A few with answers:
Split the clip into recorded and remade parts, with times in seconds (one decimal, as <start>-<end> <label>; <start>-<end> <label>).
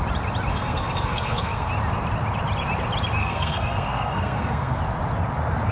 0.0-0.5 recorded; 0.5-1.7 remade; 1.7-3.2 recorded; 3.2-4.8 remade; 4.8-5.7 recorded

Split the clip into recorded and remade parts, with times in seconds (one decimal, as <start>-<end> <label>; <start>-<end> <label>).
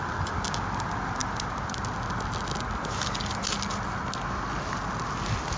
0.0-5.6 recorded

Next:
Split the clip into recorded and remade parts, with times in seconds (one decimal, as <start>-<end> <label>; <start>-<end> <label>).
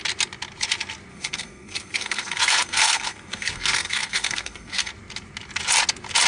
0.0-1.1 recorded; 1.1-4.9 remade; 4.9-6.3 recorded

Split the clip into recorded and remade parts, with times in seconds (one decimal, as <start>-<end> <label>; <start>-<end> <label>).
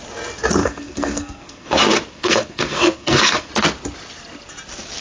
0.0-0.6 recorded; 0.6-1.7 remade; 1.7-2.1 recorded; 2.1-3.5 remade; 3.5-5.0 recorded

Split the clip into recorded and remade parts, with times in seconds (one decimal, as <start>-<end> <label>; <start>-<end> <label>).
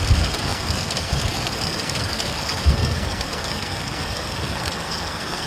0.0-5.5 remade